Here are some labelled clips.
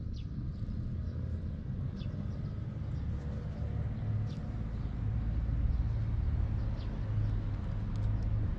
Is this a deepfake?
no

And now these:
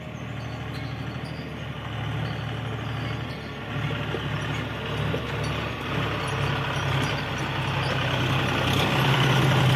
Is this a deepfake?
no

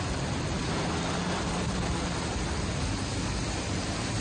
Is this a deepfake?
no